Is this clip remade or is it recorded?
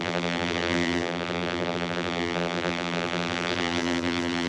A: remade